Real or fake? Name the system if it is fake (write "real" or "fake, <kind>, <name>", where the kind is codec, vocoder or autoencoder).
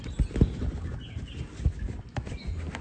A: real